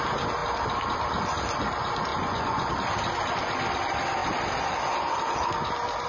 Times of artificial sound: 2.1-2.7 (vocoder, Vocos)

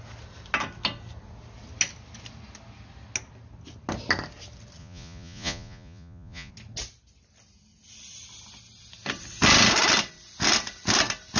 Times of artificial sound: 4.8-6.5 (vocoder, Vocos)

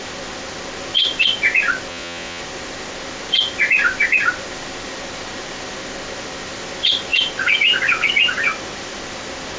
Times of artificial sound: 1.9-2.4 (vocoder, Vocos)

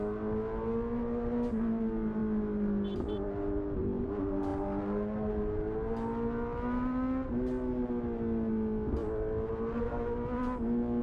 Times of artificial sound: none

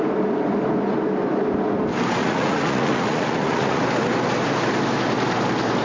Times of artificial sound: 2.2-3.8 (vocoder, Vocos)

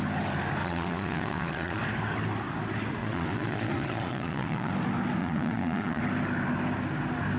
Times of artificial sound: 0.6-1.8 (vocoder, Vocos); 3.0-4.7; 5.2-6.0

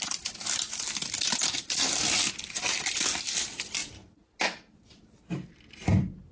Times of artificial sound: none

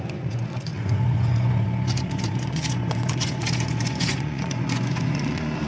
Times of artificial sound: 0.0-5.7 (vocoder, Vocos)